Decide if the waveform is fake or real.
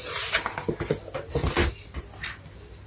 real